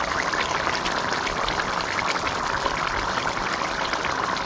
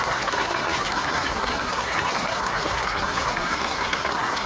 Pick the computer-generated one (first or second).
second